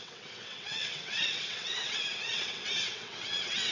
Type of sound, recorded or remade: remade